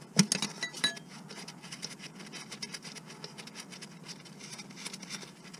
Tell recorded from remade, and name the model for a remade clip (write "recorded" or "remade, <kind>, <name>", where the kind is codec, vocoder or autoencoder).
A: recorded